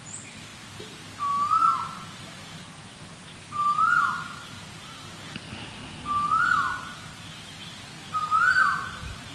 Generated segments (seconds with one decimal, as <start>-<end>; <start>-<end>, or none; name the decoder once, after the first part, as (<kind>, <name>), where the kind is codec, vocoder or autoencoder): none